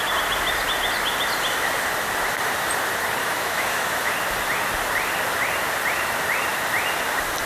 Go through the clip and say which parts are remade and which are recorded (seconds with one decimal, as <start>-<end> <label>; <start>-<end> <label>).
0.0-3.2 recorded; 3.2-4.1 remade; 4.1-7.5 recorded